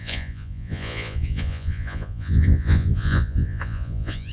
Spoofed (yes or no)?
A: yes